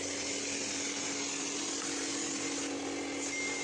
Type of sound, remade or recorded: recorded